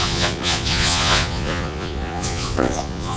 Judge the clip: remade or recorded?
remade